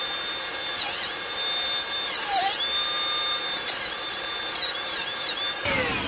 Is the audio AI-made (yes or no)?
no